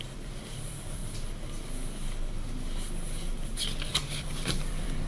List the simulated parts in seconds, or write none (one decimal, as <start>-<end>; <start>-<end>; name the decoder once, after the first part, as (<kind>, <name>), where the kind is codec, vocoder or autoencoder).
0.0-1.0 (vocoder, BigVGAN v2); 4.1-5.1